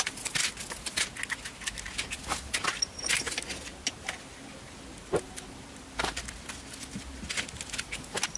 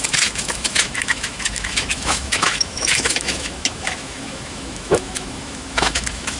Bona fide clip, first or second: first